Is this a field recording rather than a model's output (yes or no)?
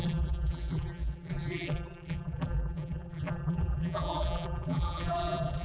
no